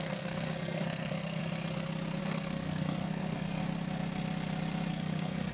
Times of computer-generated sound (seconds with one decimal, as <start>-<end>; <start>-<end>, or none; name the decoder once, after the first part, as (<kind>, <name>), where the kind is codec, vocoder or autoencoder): 0.0-1.4 (codec, SNAC); 2.2-3.6; 4.9-5.5